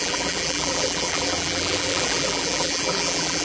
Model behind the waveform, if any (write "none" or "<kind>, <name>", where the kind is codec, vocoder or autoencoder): vocoder, BigVGAN v2